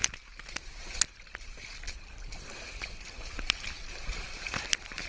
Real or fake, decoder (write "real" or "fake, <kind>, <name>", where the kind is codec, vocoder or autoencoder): real